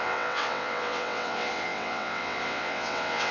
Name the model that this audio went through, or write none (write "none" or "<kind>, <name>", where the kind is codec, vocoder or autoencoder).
vocoder, WaveNeXt